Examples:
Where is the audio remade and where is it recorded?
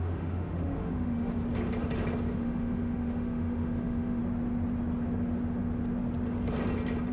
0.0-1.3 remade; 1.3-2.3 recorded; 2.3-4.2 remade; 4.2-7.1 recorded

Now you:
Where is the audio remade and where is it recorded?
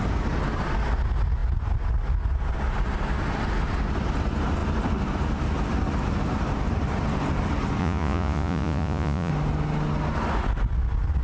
0.0-7.8 recorded; 7.8-9.3 remade; 9.3-11.2 recorded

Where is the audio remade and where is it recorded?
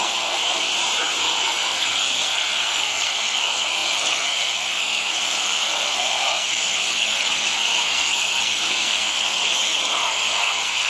0.0-0.7 remade; 0.7-1.2 recorded; 1.2-10.9 remade